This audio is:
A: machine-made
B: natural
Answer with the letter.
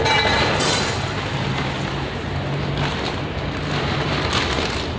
B